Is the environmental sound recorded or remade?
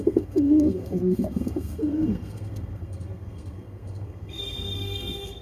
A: remade